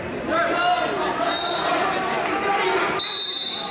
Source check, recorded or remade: recorded